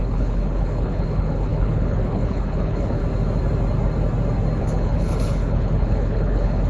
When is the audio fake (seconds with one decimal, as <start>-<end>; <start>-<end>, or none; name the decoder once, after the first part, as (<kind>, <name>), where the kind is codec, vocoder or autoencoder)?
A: 0.0-3.0 (codec, HILCodec); 4.6-6.7